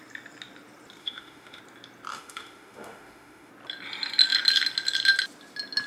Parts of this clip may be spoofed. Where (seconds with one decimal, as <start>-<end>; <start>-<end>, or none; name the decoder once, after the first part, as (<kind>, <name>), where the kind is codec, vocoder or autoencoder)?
1.0-1.6 (autoencoder, DAC-VAE); 2.1-3.5

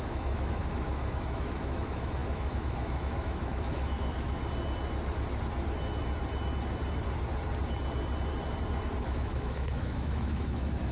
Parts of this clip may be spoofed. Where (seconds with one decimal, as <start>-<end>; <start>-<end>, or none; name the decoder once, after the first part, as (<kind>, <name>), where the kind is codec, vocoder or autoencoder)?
0.0-4.4 (autoencoder, DAC-VAE); 9.0-10.9